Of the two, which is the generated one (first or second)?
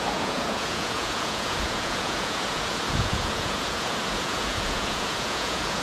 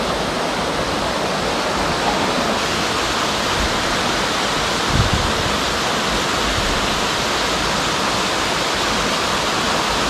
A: first